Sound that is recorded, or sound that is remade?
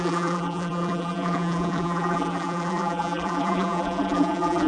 remade